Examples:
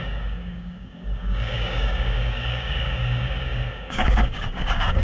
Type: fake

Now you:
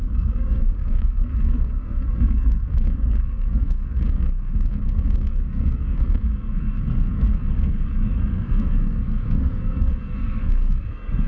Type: fake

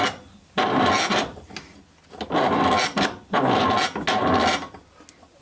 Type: real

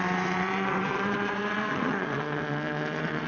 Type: fake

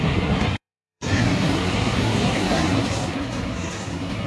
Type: fake